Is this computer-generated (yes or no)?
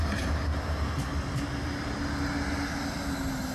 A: no